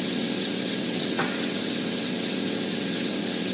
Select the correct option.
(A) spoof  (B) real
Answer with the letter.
A